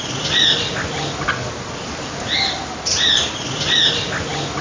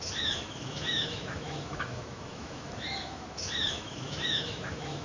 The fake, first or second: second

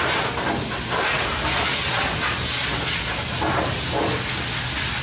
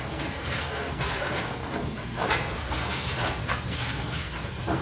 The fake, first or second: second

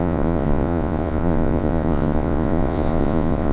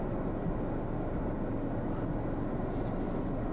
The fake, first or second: first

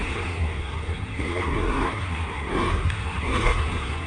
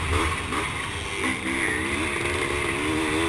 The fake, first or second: first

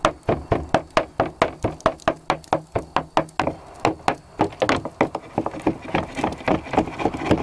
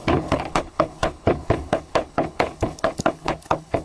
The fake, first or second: second